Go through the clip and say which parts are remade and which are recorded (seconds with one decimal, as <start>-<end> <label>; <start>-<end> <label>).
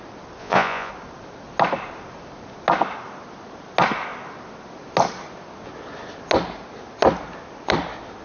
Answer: 0.0-0.4 recorded; 0.4-0.9 remade; 0.9-8.2 recorded